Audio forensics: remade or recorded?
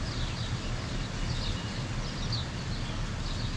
recorded